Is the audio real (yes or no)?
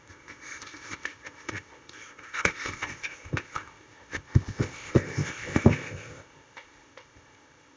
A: no